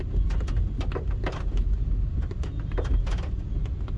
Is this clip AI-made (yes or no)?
no